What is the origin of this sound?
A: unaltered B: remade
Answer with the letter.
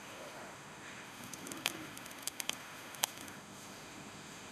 B